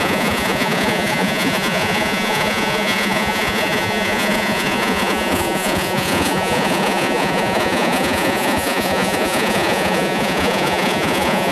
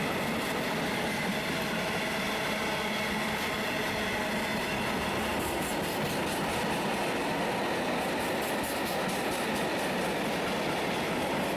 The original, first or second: second